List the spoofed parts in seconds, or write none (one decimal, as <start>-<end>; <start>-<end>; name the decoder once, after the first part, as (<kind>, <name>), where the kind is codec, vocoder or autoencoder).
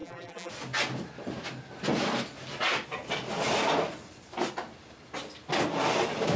0.0-0.5 (vocoder, BigVGAN v2)